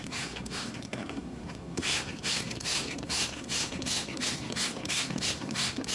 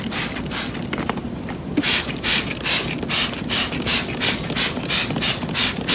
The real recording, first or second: second